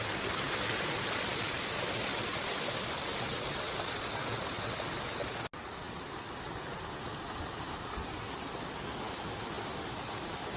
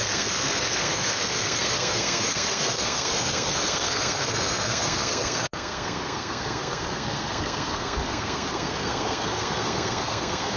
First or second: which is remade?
second